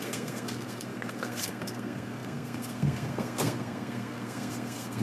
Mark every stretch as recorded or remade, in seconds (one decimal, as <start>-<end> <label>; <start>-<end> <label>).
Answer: 0.0-5.0 remade